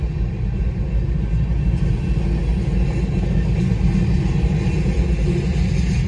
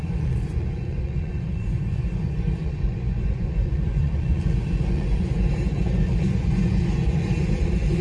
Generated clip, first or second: second